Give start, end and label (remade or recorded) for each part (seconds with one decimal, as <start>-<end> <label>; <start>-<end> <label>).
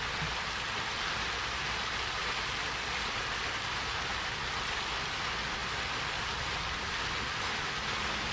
0.0-8.3 recorded